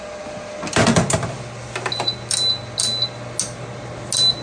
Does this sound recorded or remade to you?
recorded